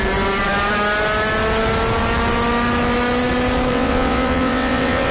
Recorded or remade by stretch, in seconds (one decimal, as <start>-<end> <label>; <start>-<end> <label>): 0.0-3.7 recorded; 3.7-5.1 remade